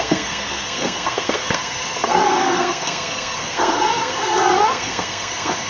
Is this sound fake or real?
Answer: fake